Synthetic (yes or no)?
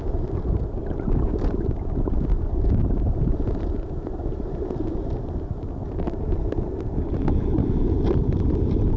no